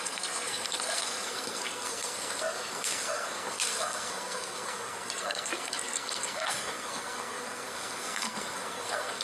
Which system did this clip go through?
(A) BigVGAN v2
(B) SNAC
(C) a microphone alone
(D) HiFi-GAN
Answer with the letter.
B